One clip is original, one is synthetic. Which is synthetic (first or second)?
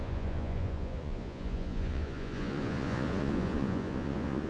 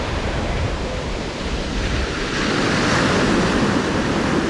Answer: first